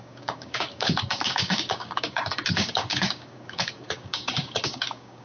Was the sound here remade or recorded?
remade